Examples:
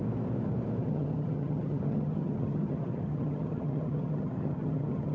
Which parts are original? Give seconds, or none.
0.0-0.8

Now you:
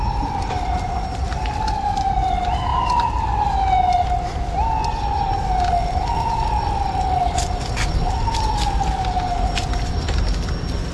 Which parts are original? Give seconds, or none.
0.0-10.9

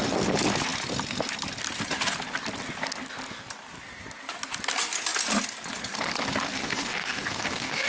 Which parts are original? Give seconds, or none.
0.0-6.6

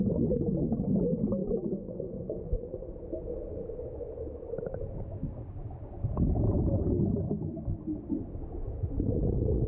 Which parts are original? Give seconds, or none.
0.0-1.4; 2.9-9.7